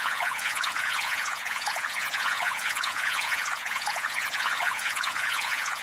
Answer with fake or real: fake